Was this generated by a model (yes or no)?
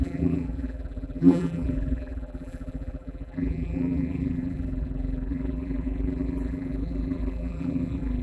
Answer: yes